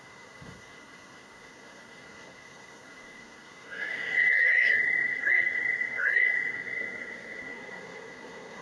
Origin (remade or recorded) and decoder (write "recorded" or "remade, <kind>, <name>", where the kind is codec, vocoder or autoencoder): remade, codec, SNAC